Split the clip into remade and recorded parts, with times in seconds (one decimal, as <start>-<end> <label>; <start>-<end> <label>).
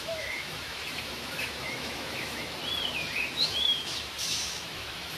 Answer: 0.0-2.6 remade; 2.6-3.2 recorded; 3.2-5.2 remade